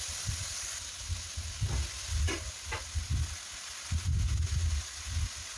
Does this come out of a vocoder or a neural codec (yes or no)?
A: no